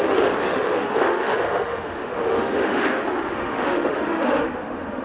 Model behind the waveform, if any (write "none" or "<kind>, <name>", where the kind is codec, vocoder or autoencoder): autoencoder, DAC-VAE